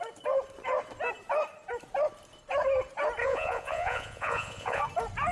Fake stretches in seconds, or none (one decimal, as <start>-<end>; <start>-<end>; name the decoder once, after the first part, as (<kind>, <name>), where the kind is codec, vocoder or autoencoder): 3.2-4.8 (vocoder, Vocos)